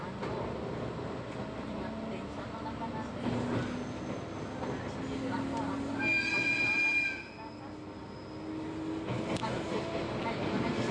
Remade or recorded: recorded